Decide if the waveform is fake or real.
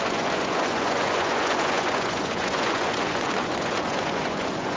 fake